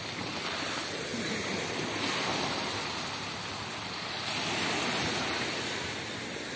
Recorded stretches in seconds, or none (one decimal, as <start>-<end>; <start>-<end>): 0.0-6.6